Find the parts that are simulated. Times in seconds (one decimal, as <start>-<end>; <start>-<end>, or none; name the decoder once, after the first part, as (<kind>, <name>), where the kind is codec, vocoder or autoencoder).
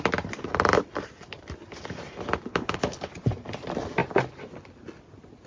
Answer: 2.5-3.1 (codec, HILCodec)